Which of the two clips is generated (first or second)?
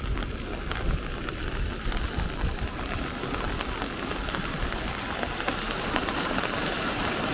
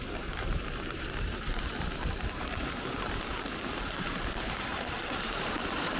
second